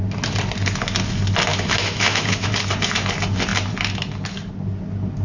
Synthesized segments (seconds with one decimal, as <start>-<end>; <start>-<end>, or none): 1.5-2.5